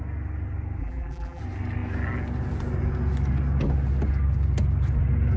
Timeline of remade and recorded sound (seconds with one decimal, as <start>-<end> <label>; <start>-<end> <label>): 0.0-0.8 recorded; 0.8-1.4 remade; 1.4-5.4 recorded